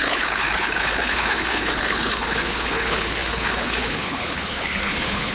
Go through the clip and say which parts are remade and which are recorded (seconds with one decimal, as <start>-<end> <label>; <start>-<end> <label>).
0.0-5.3 remade